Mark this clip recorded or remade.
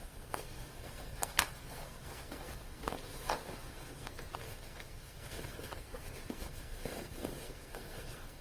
remade